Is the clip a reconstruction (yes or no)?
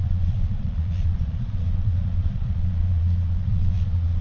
yes